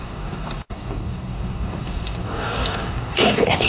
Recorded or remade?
remade